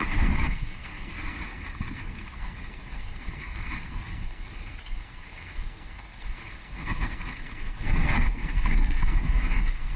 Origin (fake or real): fake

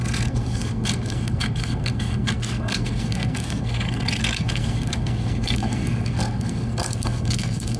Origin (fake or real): fake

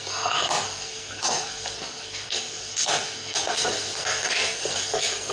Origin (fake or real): fake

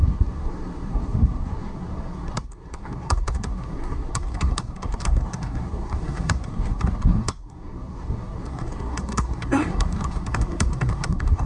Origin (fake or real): fake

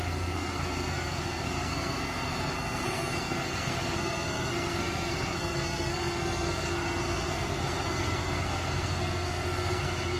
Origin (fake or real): fake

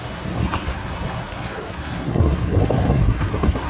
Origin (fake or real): fake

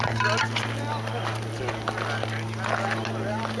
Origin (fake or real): real